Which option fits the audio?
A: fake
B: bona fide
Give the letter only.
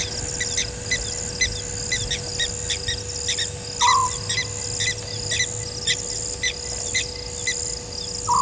B